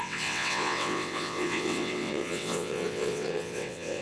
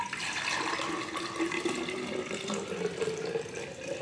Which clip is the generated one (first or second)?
first